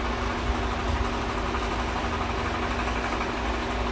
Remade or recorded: recorded